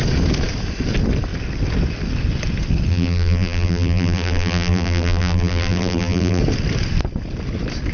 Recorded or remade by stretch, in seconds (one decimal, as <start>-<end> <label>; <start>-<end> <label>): 0.0-2.9 recorded; 2.9-6.4 remade; 6.4-7.9 recorded